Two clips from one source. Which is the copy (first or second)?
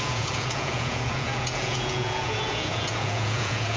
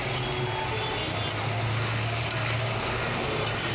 first